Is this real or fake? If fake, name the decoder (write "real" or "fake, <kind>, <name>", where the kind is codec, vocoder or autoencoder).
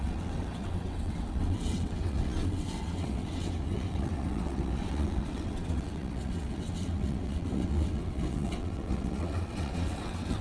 fake, vocoder, WaveNeXt